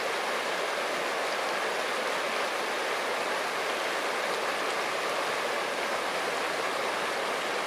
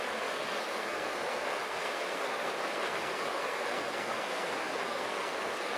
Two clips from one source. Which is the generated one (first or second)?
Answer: second